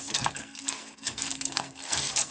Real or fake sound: fake